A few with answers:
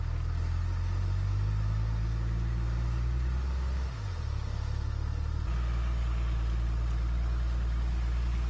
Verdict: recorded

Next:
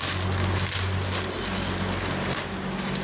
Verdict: recorded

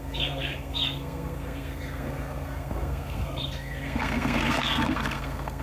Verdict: remade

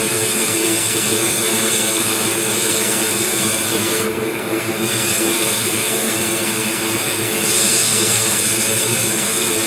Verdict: remade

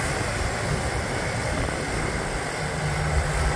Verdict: recorded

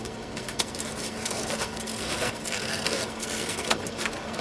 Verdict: remade